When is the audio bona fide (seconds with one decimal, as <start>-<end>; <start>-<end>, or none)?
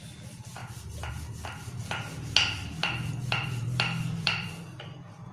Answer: 0.0-2.6